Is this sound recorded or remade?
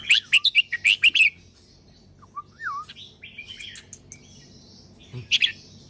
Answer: recorded